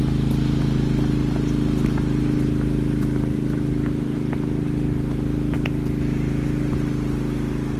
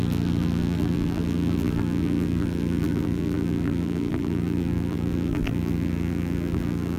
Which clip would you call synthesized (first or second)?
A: second